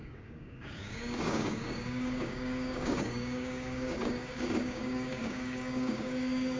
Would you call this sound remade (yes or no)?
yes